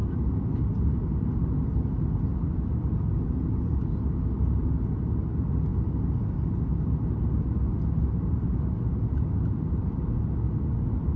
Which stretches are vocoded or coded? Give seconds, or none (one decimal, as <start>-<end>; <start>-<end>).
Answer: none